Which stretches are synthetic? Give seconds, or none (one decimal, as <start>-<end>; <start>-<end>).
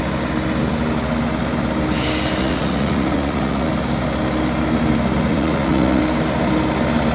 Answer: 2.4-3.7; 5.3-6.0